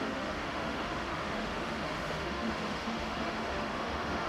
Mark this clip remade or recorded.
remade